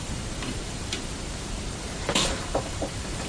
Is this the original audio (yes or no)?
no